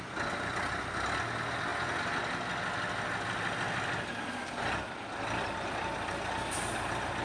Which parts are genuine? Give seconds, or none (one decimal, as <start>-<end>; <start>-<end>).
0.0-7.2